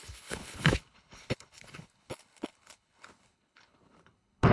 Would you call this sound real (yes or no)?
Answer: no